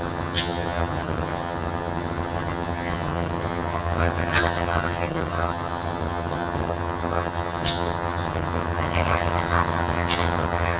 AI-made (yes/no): yes